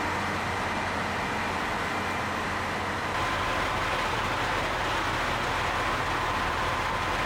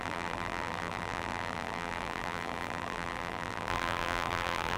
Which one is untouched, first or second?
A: first